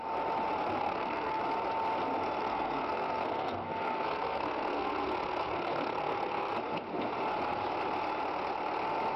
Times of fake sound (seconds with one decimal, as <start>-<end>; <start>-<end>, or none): 0.8-1.4; 2.4-6.5